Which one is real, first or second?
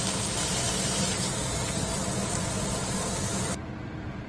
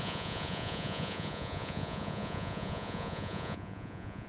first